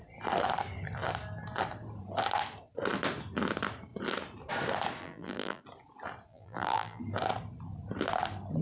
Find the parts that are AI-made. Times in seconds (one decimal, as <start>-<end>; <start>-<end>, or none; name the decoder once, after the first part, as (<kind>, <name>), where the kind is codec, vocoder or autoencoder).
5.0-5.6 (vocoder, BigVGAN v2); 6.3-7.0